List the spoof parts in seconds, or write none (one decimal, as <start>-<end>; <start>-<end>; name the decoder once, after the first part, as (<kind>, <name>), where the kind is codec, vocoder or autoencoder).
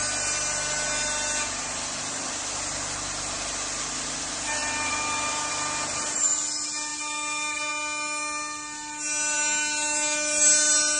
none